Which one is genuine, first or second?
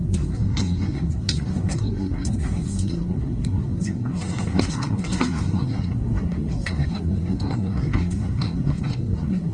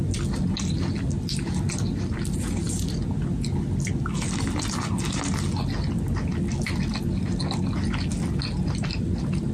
second